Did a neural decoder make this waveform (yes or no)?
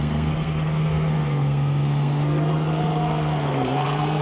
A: yes